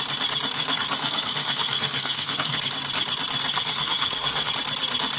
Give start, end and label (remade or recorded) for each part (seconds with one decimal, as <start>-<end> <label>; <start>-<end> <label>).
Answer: 0.0-0.6 recorded; 0.6-2.6 remade; 2.6-3.4 recorded; 3.4-4.5 remade; 4.5-5.2 recorded

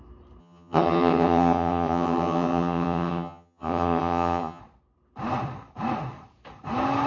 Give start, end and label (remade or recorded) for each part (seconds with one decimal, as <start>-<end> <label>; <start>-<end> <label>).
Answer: 0.0-0.4 recorded; 0.4-4.6 remade; 4.6-7.1 recorded

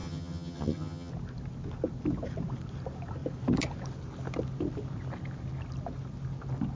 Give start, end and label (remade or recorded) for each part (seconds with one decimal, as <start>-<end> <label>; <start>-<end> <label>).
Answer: 0.0-1.1 remade; 1.1-6.8 recorded

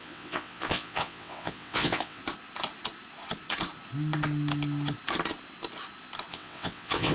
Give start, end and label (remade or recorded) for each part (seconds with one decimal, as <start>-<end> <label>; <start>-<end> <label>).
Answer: 0.0-2.2 remade; 2.2-6.3 recorded; 6.3-7.1 remade

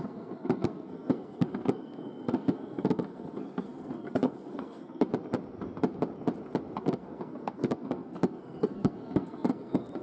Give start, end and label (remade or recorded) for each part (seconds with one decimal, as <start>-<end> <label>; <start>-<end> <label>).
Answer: 0.0-5.1 remade; 5.1-6.8 recorded; 6.8-10.0 remade

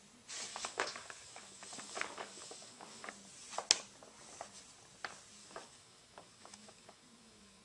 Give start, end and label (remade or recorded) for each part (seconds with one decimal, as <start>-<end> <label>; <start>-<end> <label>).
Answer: 0.0-0.5 recorded; 0.5-3.1 remade; 3.1-5.4 recorded; 5.4-7.6 remade

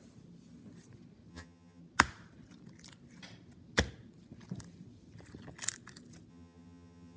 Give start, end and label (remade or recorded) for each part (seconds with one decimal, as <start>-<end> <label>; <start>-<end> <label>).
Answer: 0.0-1.3 recorded; 1.3-1.8 remade; 1.8-6.3 recorded; 6.3-7.2 remade